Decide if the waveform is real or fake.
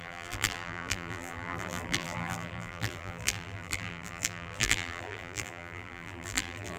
fake